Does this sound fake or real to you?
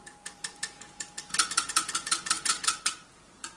fake